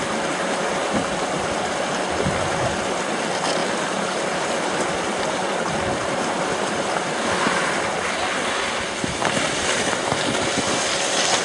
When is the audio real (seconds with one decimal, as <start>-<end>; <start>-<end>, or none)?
0.0-0.8; 3.2-3.6; 4.6-11.4